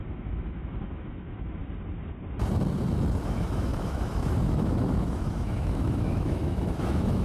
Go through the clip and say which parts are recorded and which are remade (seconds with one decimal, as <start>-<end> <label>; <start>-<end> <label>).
0.0-1.6 remade; 1.6-3.2 recorded; 3.2-7.2 remade